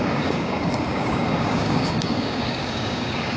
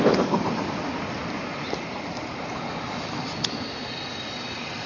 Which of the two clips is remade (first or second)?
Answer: first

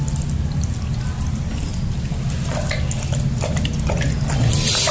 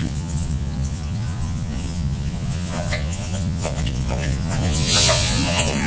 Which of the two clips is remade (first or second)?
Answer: second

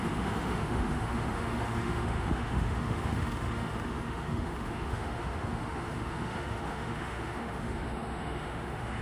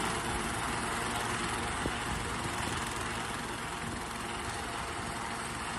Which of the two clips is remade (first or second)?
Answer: first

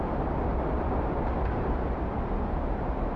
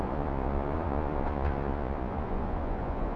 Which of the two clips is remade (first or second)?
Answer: second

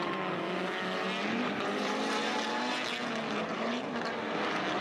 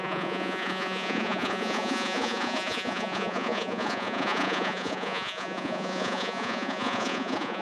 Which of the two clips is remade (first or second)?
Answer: second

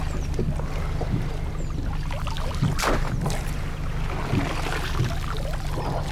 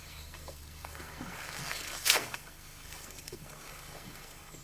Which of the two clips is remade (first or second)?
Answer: second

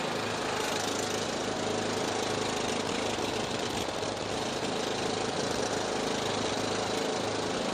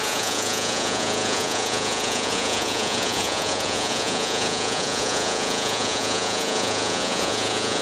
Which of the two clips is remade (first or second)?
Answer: second